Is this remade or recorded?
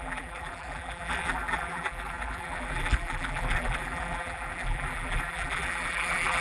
remade